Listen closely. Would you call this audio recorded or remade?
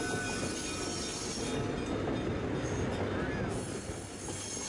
recorded